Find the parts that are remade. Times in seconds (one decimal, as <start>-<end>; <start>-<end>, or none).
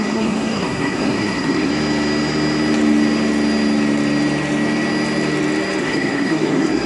0.0-1.7; 5.8-6.9